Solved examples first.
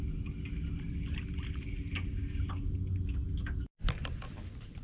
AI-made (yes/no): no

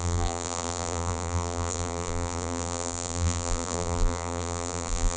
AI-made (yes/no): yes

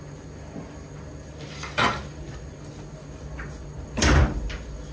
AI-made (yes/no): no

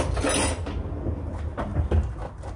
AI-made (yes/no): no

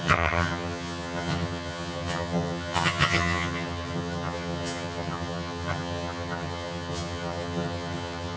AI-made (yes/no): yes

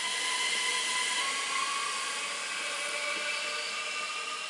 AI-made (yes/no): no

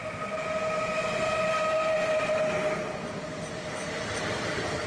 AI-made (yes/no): no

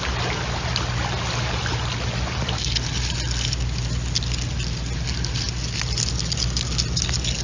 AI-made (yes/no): no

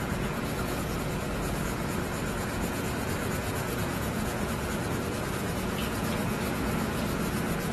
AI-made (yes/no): yes